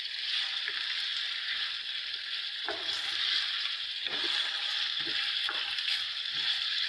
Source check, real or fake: real